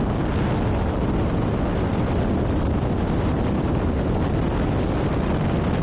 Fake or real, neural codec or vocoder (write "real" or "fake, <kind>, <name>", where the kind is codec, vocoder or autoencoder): real